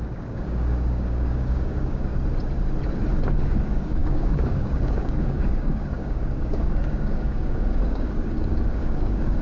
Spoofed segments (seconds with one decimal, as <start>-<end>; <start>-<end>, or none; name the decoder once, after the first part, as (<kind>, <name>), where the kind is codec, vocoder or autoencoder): 0.0-2.1 (codec, DAC); 3.3-9.4